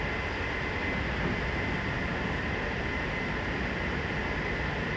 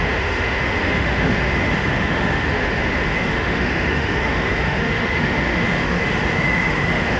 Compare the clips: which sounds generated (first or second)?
second